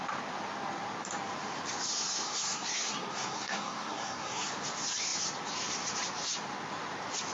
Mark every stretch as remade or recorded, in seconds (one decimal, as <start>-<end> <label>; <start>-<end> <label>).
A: 0.0-1.9 recorded; 1.9-4.5 remade; 4.5-7.3 recorded

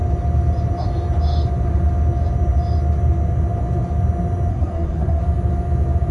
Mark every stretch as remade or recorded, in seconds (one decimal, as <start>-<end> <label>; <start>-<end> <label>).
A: 0.0-4.5 recorded; 4.5-5.2 remade; 5.2-6.1 recorded